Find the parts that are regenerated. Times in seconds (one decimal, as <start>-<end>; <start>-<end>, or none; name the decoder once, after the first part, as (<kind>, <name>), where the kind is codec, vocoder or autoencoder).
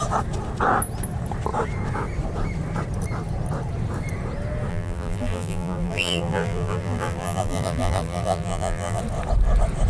4.7-9.0 (vocoder, BigVGAN v2)